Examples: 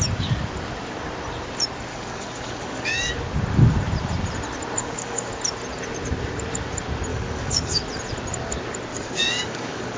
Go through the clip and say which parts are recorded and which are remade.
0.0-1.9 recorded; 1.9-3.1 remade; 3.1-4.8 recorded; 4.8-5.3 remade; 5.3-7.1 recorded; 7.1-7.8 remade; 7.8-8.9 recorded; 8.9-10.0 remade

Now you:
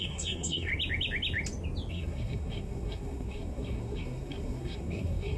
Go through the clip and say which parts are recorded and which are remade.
0.0-0.7 remade; 0.7-1.9 recorded; 1.9-5.4 remade